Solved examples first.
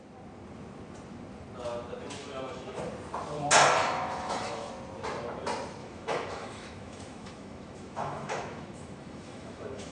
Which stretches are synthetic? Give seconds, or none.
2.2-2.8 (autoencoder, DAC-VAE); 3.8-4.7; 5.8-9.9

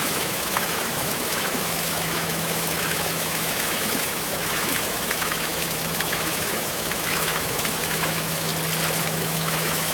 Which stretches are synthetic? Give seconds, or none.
0.0-8.5 (autoencoder, DAC-VAE); 9.0-9.9